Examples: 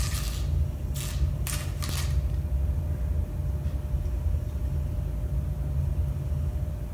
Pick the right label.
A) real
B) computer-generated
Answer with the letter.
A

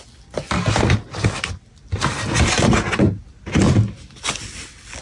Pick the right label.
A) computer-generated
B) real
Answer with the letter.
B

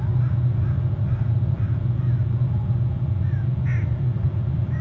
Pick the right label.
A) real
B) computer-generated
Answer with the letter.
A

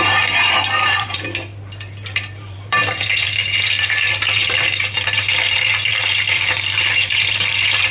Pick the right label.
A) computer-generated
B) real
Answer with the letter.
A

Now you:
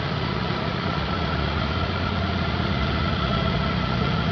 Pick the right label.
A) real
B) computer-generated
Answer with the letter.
B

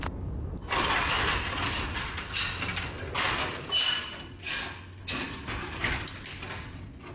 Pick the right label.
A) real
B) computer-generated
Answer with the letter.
A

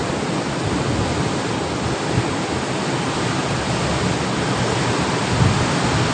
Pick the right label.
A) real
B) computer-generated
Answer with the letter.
A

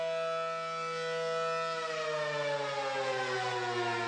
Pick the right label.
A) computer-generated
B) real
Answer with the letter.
B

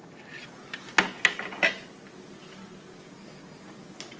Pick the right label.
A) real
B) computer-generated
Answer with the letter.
A